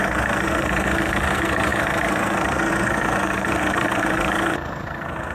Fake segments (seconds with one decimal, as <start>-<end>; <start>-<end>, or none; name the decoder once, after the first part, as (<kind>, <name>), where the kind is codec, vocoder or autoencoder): 0.0-5.3 (codec, SNAC)